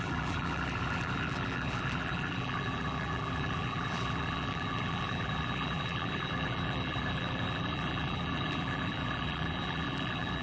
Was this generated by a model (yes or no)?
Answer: yes